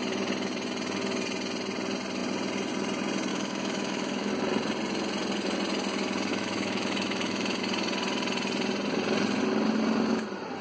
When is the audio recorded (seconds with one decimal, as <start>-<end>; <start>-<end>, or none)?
0.0-3.3; 4.3-6.3; 7.6-10.6